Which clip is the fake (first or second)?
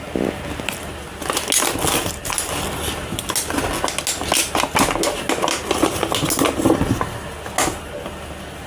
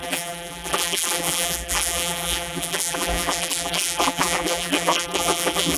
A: second